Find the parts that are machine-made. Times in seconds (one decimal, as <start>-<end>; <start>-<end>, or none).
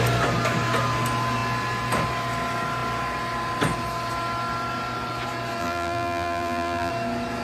5.6-6.9